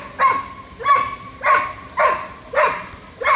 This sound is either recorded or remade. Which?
recorded